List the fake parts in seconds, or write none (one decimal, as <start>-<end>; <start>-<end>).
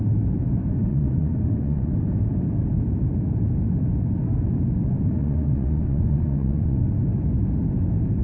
0.9-1.9; 5.2-6.9